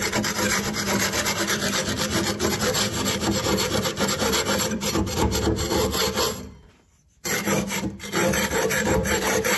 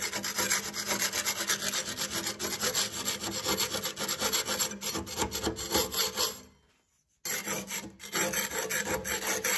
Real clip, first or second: second